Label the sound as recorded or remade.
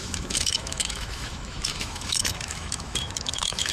remade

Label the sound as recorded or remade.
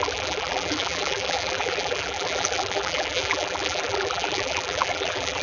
remade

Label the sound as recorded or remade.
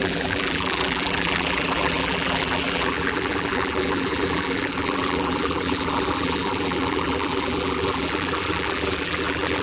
remade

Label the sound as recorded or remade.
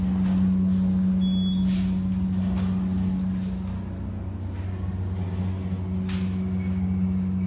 recorded